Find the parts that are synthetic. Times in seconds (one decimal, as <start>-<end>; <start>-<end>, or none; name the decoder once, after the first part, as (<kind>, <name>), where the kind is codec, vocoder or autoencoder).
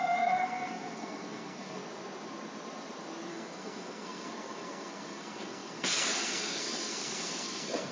0.0-1.8 (codec, SNAC); 3.3-7.9